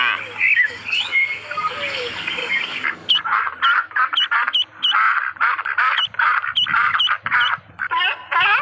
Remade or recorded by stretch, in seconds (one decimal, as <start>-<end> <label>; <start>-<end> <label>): 0.0-0.4 recorded; 0.4-3.2 remade; 3.2-8.6 recorded